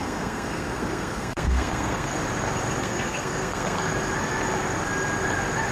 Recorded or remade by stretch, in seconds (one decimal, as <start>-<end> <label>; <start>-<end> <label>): 0.0-2.1 remade; 2.1-2.8 recorded; 2.8-3.9 remade; 3.9-5.7 recorded